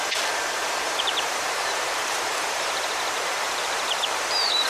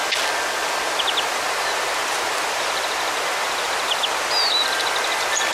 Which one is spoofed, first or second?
first